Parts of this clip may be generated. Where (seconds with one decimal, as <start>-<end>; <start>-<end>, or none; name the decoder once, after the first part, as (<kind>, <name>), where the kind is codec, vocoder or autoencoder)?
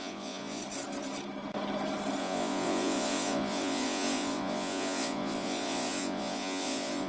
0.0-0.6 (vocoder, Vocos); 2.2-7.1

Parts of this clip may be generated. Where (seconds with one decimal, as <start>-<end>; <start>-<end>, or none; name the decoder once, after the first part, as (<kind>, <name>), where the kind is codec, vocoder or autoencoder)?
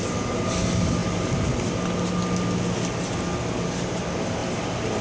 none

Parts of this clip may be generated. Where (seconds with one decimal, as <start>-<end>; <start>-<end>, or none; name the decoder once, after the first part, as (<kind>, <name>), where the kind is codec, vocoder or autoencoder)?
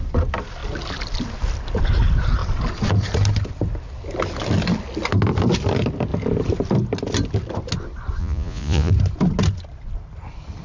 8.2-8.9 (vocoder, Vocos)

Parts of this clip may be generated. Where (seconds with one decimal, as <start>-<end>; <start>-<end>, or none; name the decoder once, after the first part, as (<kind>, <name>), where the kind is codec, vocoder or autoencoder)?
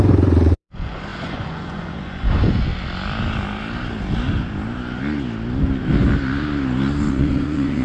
0.0-2.7 (vocoder, Vocos); 7.1-7.8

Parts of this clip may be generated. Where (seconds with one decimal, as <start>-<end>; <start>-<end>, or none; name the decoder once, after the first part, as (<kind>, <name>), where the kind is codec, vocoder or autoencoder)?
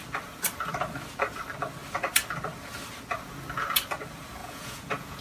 4.4-5.2 (vocoder, Vocos)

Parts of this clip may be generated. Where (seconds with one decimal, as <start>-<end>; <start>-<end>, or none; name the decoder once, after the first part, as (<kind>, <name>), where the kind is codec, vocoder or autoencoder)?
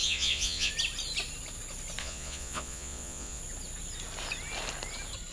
0.0-0.7 (vocoder, Vocos); 2.0-3.4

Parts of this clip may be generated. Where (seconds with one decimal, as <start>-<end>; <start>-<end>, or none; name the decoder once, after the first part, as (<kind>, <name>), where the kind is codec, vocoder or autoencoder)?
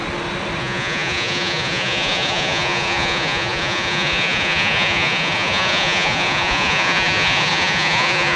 0.6-8.4 (vocoder, Vocos)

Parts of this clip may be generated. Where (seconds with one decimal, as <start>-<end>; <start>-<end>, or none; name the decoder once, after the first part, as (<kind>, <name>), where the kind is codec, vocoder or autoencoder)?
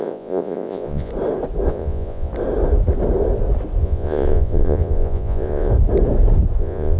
0.0-1.1 (vocoder, Vocos); 1.7-2.3; 3.8-5.7; 6.6-7.0